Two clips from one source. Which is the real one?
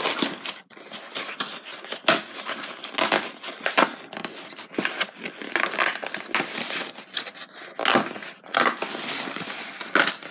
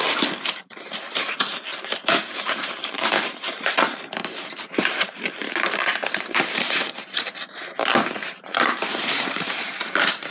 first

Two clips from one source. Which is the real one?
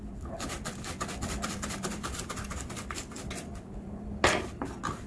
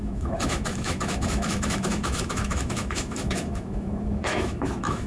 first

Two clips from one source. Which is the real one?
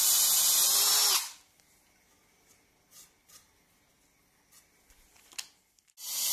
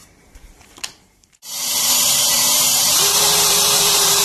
first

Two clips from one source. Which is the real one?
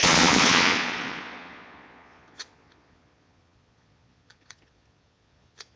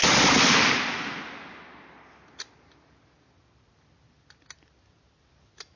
second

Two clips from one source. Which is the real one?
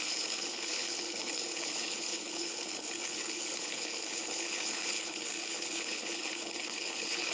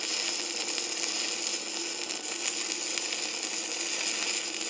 second